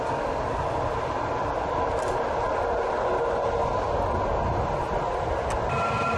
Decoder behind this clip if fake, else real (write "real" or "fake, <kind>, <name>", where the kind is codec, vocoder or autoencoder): real